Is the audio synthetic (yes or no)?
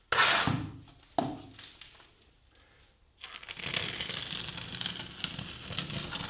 no